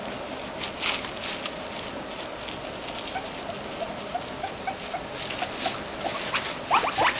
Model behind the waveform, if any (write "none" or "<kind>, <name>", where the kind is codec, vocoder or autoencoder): none